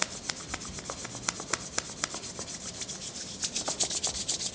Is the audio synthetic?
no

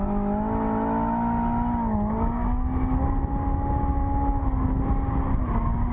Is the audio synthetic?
no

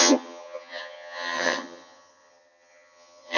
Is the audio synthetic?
yes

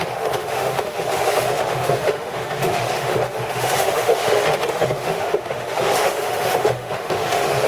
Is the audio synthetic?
yes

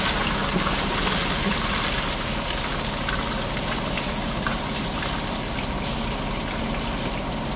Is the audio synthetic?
no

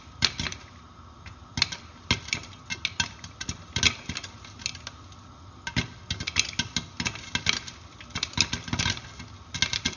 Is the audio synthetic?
no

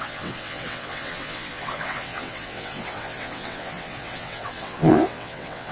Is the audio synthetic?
yes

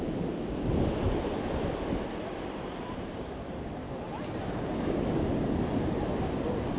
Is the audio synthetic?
no